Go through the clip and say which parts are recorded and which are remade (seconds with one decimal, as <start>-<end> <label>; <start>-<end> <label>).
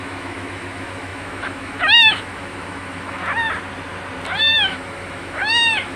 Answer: 0.0-3.2 remade; 3.2-4.4 recorded; 4.4-6.0 remade